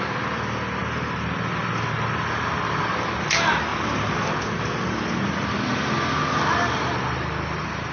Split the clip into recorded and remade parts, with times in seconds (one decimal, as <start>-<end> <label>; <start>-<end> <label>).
0.0-7.9 recorded